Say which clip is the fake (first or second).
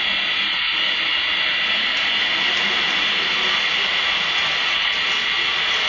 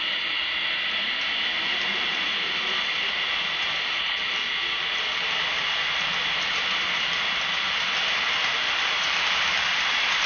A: second